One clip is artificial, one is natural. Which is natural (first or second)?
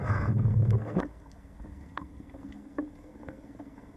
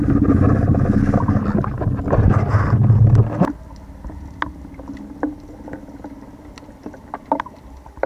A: second